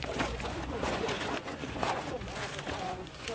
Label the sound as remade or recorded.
remade